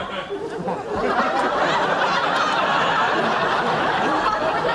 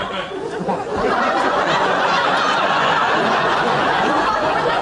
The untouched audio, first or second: first